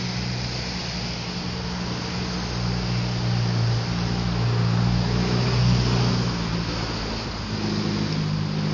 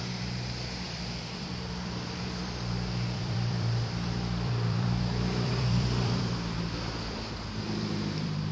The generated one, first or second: second